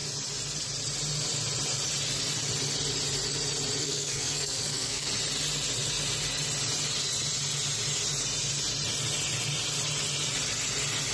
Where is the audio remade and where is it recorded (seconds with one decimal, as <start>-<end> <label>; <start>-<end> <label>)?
0.0-3.8 recorded; 3.8-5.1 remade; 5.1-11.1 recorded